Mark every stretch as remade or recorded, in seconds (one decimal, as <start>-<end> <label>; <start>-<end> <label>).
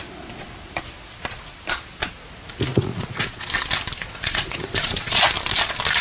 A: 0.0-2.7 recorded; 2.7-3.5 remade; 3.5-4.0 recorded; 4.0-5.2 remade; 5.2-6.0 recorded